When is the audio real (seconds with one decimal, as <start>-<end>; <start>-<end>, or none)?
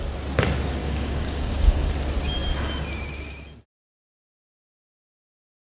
0.0-0.8; 1.9-5.7